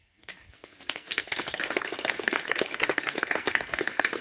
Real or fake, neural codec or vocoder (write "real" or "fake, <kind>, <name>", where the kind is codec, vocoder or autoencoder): fake, codec, SNAC